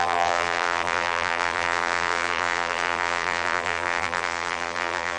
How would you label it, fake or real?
fake